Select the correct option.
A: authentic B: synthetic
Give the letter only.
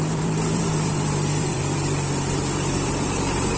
B